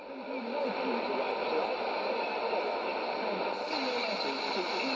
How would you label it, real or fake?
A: real